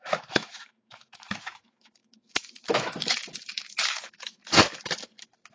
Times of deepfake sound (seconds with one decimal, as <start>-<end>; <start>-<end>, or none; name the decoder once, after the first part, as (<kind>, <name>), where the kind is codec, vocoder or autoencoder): 0.0-4.4 (autoencoder, DAC-VAE)